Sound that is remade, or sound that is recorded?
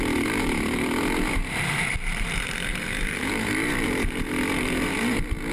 remade